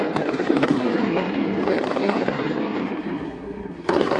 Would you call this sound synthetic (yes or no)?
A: yes